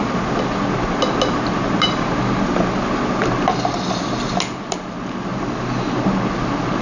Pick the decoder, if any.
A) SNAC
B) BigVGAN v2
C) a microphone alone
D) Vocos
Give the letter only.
C